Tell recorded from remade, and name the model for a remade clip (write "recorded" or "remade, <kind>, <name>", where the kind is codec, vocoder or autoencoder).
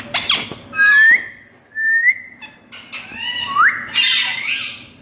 recorded